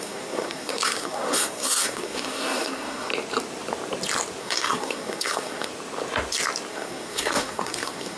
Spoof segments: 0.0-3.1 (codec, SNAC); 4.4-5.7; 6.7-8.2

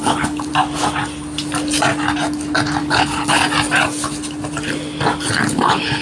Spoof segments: 0.0-0.5 (codec, HILCodec); 2.8-3.4; 5.3-6.0

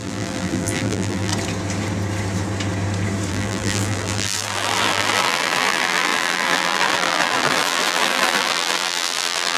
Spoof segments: 0.0-1.3 (vocoder, BigVGAN v2); 3.3-9.6

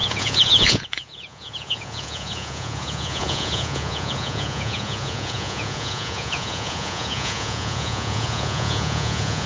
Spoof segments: 0.0-9.5 (vocoder, Vocos)

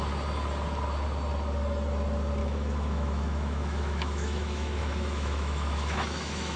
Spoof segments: 2.4-6.6 (autoencoder, DAC-VAE)

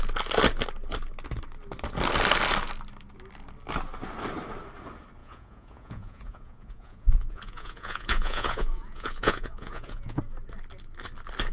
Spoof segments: 5.2-10.2 (vocoder, Vocos)